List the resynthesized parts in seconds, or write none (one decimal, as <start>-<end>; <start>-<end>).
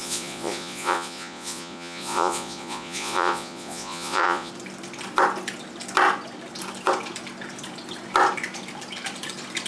0.0-4.5